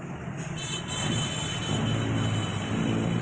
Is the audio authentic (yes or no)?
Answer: yes